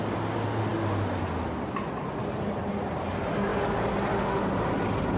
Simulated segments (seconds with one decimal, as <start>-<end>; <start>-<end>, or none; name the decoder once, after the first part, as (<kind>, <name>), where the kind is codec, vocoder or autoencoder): none